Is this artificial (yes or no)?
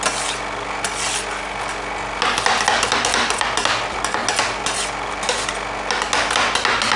no